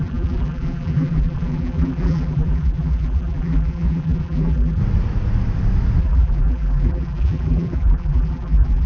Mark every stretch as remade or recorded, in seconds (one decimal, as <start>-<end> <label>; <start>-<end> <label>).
0.0-4.8 remade; 4.8-6.0 recorded; 6.0-8.9 remade